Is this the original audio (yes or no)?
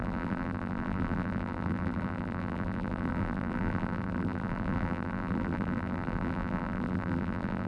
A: no